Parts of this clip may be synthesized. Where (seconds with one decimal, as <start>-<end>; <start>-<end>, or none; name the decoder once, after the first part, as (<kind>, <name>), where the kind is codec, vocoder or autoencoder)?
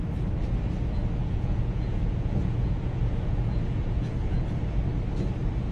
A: 1.2-4.6 (vocoder, Vocos)